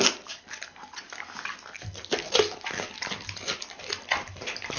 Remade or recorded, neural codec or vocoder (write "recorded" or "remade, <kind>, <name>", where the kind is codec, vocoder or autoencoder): recorded